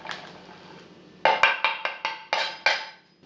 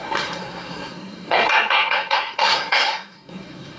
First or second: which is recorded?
first